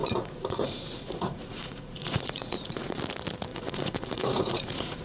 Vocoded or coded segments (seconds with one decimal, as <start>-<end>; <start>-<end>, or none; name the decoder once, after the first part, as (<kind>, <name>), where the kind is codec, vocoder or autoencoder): 0.0-3.0 (vocoder, Vocos); 3.5-5.0